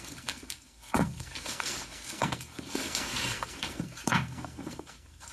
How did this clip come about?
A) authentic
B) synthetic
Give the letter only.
B